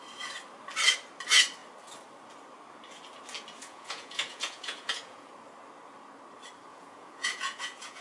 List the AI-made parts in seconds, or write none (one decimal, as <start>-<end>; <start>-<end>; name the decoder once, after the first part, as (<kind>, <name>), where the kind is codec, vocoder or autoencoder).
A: 3.6-5.3 (vocoder, Vocos); 6.7-8.0